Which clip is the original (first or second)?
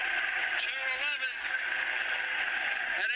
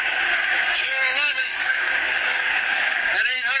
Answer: first